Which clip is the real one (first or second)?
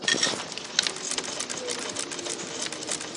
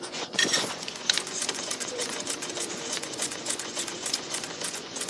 first